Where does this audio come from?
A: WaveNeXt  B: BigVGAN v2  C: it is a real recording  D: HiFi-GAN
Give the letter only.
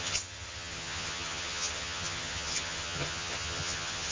D